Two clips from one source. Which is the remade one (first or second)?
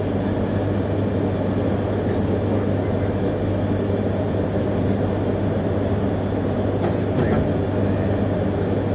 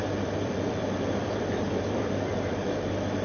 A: second